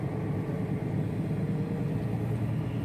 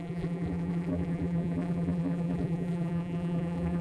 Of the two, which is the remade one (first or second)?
second